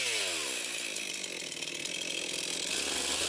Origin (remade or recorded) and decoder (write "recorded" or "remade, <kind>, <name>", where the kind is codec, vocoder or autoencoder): recorded